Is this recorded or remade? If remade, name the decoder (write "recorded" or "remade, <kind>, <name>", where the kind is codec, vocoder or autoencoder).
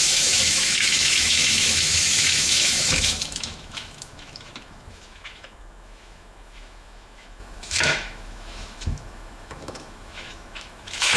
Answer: remade, autoencoder, DAC-VAE